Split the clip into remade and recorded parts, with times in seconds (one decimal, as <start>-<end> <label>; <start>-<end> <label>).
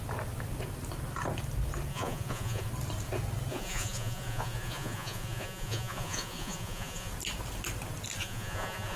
0.0-1.9 recorded; 1.9-2.7 remade; 2.7-3.5 recorded; 3.5-7.1 remade; 7.1-8.2 recorded; 8.2-9.0 remade